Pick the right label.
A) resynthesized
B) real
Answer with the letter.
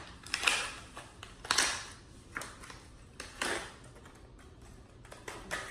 B